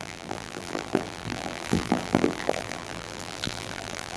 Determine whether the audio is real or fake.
fake